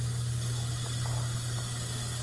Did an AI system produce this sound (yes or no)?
no